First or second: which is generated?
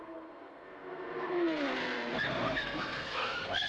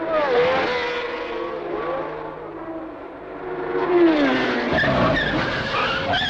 first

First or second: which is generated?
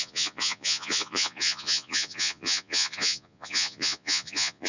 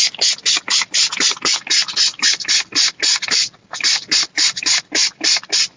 first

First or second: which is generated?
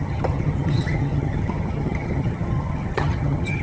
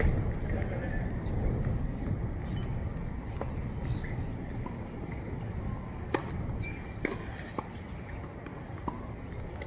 first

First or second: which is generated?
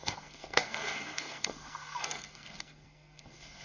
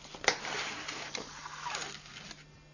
first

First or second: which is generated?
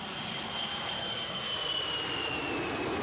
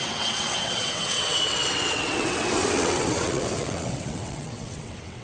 second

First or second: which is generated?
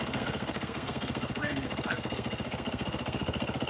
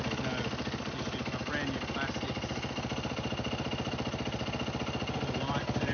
first